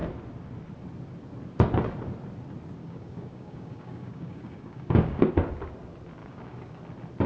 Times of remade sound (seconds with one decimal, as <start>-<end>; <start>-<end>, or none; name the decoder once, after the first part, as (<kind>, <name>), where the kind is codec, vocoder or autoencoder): 2.8-5.3 (codec, DAC); 6.2-6.8